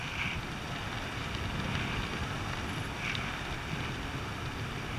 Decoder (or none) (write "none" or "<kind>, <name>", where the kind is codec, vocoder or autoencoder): none